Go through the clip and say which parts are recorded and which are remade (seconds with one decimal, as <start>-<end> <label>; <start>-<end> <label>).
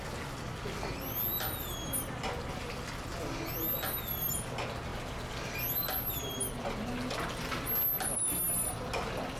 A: 0.0-9.4 recorded